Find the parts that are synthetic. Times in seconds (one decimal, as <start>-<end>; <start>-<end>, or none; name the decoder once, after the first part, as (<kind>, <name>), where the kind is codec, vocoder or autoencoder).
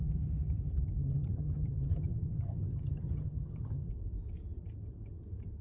1.0-3.9 (vocoder, HiFi-GAN)